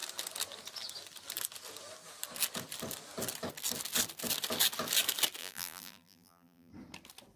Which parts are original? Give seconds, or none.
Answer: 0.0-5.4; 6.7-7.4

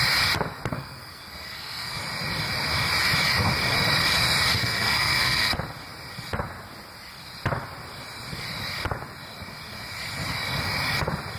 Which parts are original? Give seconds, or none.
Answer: 0.0-0.7; 2.0-4.6; 5.5-11.4

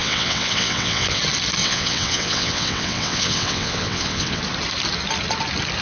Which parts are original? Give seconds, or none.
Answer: 1.2-1.6; 4.4-5.8

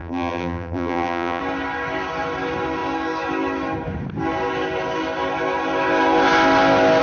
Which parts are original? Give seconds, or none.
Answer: 1.4-7.0

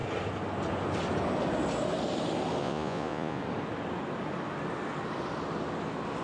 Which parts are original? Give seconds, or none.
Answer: 0.0-2.6; 3.4-6.2

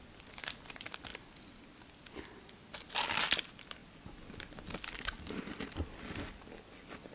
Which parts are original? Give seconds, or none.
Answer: 1.1-2.4

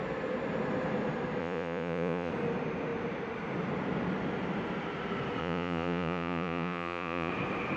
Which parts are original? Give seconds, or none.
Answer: 0.0-1.4; 2.3-5.4; 7.3-7.8